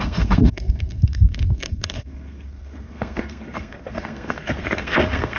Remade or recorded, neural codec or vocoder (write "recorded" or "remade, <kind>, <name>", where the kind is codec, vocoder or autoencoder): remade, codec, SNAC